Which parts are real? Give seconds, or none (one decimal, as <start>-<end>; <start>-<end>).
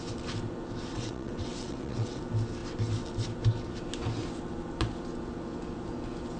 0.0-0.9; 2.2-6.4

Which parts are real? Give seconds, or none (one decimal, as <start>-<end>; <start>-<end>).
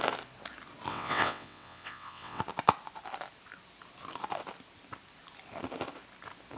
0.0-0.9; 2.4-6.6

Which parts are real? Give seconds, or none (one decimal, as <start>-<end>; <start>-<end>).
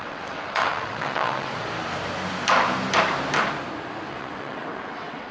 1.5-4.1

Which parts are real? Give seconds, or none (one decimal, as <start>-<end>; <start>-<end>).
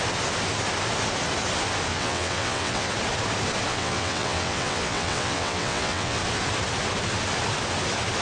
0.0-1.9; 2.9-3.7; 6.2-8.2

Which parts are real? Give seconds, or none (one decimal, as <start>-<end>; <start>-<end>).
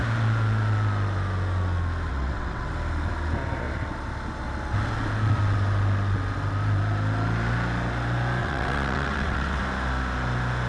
0.0-2.1; 2.7-8.4; 9.6-10.7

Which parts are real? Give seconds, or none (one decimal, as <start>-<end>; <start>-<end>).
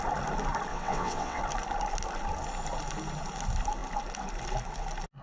0.0-0.7; 1.4-5.2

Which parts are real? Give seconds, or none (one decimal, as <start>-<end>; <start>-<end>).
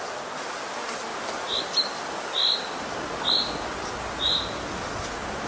0.0-5.5